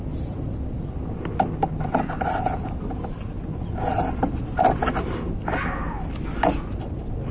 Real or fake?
real